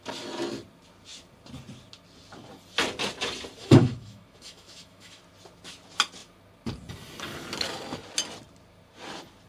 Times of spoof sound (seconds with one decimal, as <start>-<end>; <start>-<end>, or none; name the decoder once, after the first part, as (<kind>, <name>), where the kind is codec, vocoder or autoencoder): 3.6-5.2 (autoencoder, DAC-VAE)